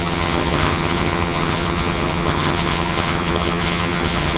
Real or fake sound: fake